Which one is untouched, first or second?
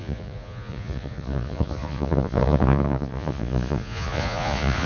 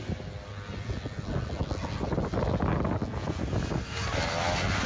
second